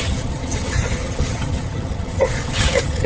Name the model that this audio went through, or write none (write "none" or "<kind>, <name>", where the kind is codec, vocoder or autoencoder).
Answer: vocoder, HiFi-GAN